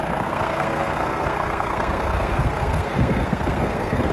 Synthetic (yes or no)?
yes